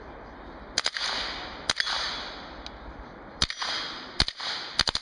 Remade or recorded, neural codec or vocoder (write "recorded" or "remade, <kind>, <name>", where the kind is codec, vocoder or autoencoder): recorded